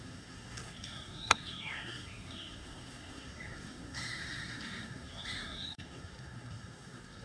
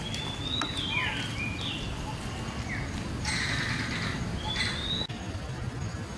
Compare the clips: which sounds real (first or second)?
second